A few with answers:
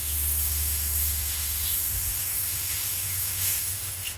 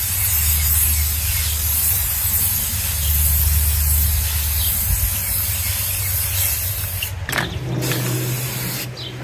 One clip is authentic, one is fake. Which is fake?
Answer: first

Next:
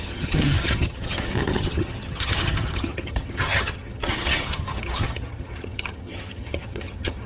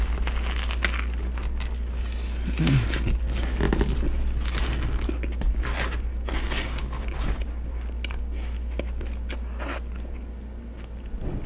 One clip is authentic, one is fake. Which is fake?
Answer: first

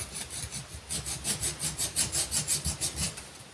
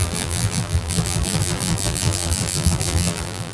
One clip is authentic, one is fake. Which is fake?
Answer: second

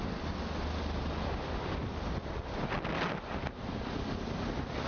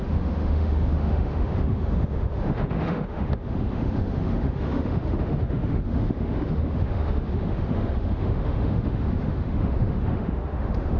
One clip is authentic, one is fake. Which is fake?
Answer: second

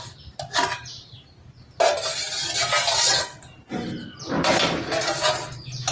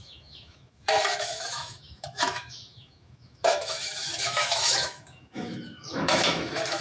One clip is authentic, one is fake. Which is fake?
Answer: second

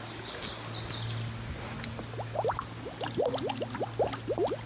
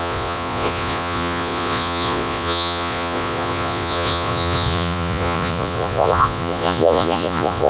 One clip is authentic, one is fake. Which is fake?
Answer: second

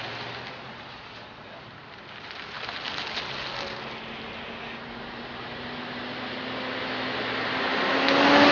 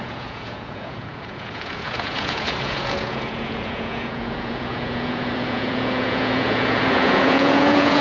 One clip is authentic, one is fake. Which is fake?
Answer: second